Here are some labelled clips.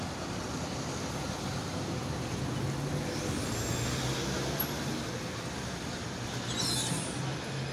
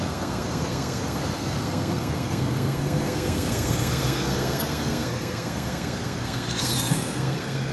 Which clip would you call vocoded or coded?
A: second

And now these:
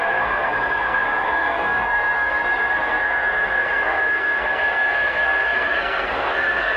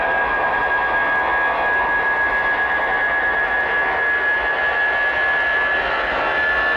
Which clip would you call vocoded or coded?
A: first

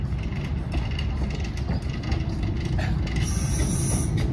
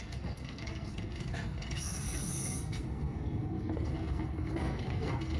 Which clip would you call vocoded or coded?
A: second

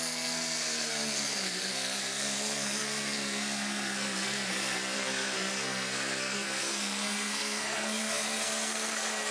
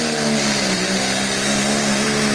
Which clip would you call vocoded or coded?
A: first